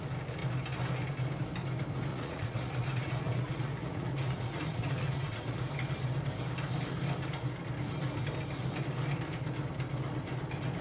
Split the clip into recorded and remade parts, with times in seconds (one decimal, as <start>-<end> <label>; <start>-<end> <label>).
0.0-2.1 recorded; 2.1-5.7 remade; 5.7-10.8 recorded